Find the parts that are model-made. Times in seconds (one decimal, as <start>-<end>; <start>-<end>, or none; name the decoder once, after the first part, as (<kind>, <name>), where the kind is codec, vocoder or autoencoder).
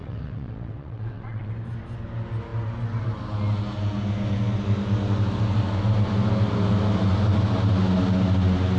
0.0-1.5 (vocoder, WaveNeXt)